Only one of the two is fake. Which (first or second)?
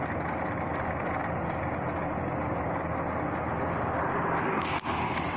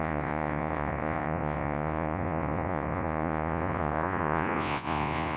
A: second